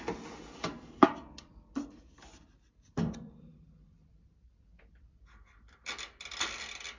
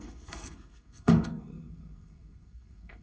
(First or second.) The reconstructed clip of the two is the second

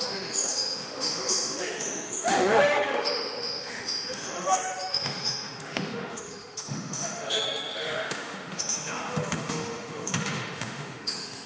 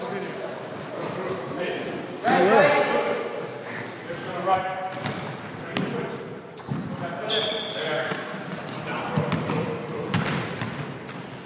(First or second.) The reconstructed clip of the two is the first